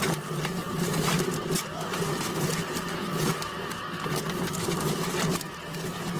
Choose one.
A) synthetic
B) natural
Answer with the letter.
B